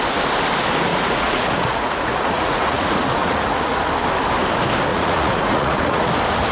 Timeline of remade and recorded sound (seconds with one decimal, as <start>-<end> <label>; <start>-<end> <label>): 0.0-0.9 recorded; 0.9-3.8 remade; 3.8-4.9 recorded; 4.9-6.1 remade; 6.1-6.5 recorded